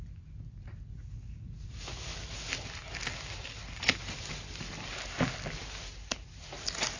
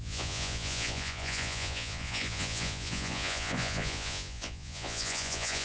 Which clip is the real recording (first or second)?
first